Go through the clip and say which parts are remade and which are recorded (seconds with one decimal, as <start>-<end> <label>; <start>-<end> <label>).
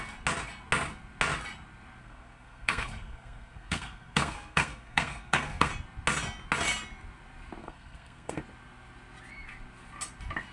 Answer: 0.0-2.0 recorded; 2.0-5.7 remade; 5.7-7.6 recorded; 7.6-8.4 remade; 8.4-10.5 recorded